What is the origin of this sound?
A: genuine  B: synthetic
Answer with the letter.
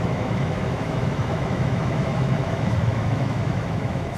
B